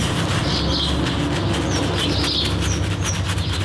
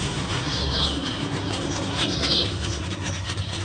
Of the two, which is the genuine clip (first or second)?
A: first